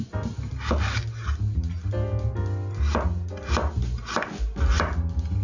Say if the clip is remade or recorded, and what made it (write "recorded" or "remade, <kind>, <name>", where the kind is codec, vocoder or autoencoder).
recorded